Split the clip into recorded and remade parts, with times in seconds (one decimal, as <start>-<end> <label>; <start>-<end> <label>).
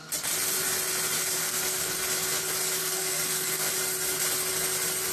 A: 0.0-1.4 recorded; 1.4-1.9 remade; 1.9-2.8 recorded; 2.8-3.7 remade; 3.7-5.1 recorded